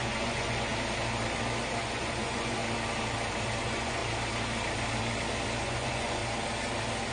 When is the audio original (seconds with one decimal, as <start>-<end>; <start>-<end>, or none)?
0.7-1.8; 2.6-3.6; 4.0-5.6; 6.2-7.1